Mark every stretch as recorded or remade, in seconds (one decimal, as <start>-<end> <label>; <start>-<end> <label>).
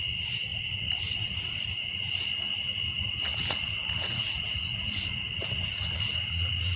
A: 0.0-0.5 recorded; 0.5-2.2 remade; 2.2-3.3 recorded; 3.3-6.8 remade